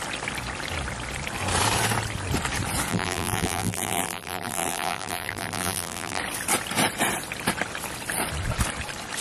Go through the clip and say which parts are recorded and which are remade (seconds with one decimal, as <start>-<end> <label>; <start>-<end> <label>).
0.0-2.9 recorded; 2.9-6.2 remade; 6.2-9.2 recorded